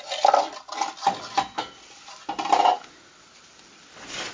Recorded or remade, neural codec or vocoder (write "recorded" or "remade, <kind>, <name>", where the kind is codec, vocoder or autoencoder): recorded